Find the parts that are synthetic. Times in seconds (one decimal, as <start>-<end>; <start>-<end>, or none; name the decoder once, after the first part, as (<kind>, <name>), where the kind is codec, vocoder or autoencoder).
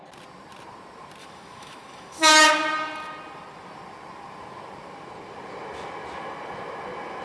1.2-2.5 (autoencoder, DAC-VAE)